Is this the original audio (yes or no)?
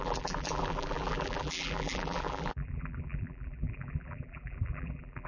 no